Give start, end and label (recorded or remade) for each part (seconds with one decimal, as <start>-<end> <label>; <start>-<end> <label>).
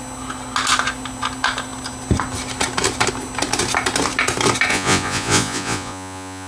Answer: 0.0-4.7 recorded; 4.7-6.5 remade